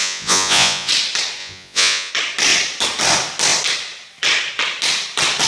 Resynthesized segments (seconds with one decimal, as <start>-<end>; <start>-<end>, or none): 0.0-0.9; 1.4-2.1